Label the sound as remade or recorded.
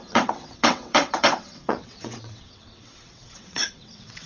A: remade